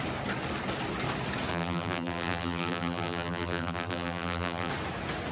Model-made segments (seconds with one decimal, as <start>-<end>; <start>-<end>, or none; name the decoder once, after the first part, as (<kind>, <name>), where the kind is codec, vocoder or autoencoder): 1.5-4.7 (vocoder, BigVGAN v2)